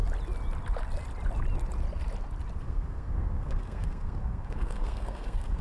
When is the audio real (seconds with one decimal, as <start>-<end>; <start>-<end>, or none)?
0.0-2.6

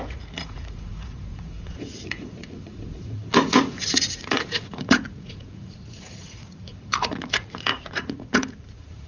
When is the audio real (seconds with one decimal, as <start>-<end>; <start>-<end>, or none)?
none

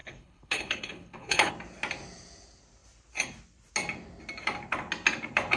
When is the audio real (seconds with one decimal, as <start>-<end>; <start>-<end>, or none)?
1.5-5.6

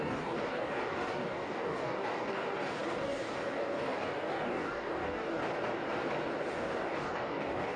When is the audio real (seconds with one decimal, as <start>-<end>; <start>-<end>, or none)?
5.4-6.5